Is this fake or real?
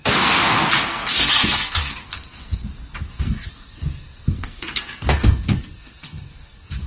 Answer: fake